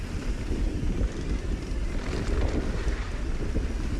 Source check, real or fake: real